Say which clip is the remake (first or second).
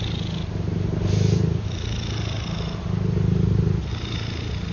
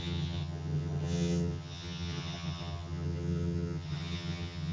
second